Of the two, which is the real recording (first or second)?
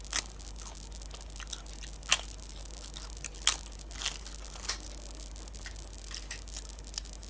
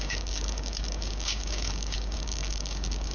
first